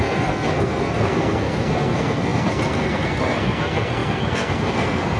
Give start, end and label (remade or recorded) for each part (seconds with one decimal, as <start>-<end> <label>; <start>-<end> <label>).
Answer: 0.0-5.2 remade